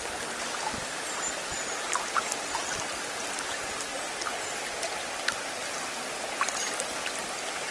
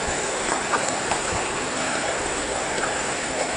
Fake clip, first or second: second